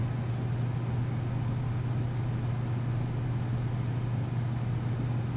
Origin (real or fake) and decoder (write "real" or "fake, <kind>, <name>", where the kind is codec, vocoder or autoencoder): real